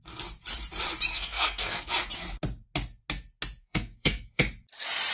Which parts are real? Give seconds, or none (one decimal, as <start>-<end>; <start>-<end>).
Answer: 0.0-1.1; 1.9-3.6; 4.4-5.1